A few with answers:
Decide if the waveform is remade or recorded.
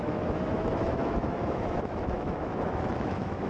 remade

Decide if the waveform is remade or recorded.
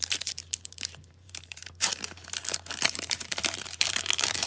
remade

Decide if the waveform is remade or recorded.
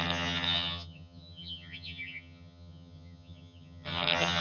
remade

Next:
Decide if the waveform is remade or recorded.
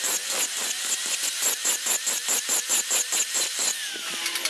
recorded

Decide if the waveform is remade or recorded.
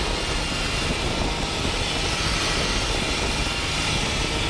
recorded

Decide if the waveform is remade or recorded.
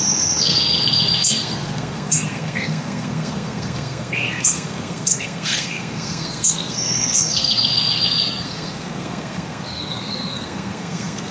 remade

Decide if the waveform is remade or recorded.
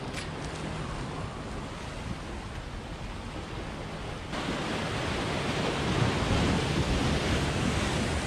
recorded